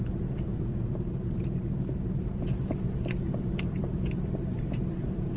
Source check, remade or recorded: remade